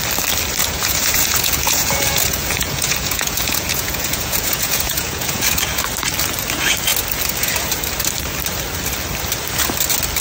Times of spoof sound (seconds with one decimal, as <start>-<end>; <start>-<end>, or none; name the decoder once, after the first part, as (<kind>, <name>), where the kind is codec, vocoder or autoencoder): 0.6-5.8 (vocoder, Vocos)